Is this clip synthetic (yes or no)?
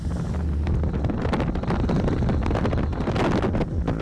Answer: no